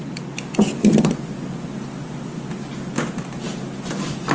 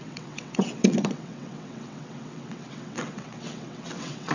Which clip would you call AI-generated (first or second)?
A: second